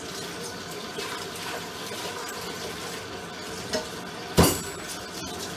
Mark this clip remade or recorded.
recorded